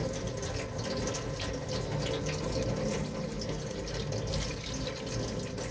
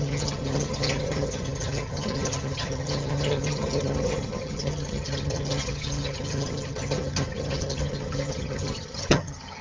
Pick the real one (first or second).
first